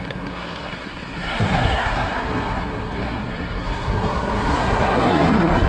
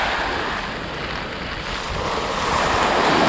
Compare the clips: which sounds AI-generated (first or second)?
first